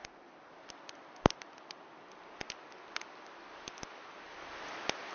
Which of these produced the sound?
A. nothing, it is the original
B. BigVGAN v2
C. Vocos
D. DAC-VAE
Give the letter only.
A